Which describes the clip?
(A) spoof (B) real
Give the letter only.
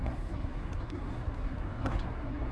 A